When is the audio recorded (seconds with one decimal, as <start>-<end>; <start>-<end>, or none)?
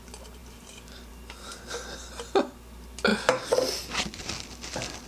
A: 0.0-5.1